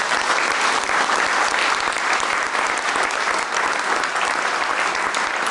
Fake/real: real